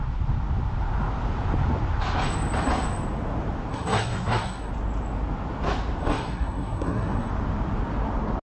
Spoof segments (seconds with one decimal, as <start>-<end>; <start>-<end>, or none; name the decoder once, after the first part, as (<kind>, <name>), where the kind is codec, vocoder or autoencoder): 3.7-4.7 (codec, SNAC); 6.0-7.3